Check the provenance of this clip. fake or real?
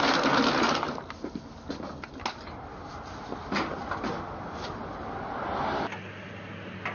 real